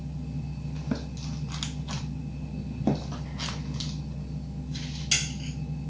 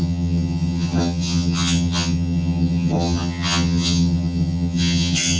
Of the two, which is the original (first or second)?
first